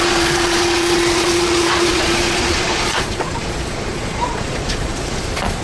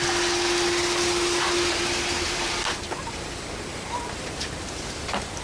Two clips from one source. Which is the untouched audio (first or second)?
second